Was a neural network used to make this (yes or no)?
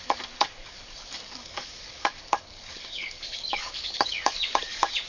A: yes